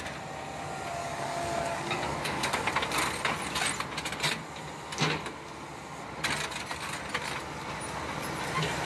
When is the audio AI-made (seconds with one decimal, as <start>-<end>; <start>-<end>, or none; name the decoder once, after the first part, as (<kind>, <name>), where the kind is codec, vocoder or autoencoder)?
1.0-2.7 (codec, DAC)